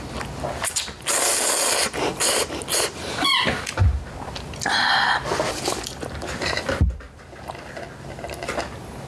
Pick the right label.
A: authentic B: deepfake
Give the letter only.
A